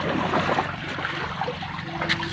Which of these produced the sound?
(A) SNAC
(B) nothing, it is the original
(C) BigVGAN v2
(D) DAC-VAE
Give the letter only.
B